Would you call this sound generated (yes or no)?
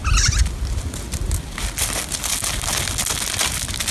no